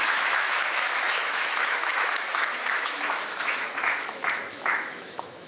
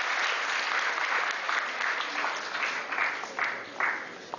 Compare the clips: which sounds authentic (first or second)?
second